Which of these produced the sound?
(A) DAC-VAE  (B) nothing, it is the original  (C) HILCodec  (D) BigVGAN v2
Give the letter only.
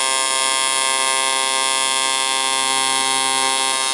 B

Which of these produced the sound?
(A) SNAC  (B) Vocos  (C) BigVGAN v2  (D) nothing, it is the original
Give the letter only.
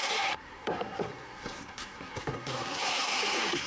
A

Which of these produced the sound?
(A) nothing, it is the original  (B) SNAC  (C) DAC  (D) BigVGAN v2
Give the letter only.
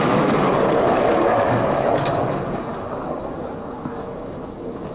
C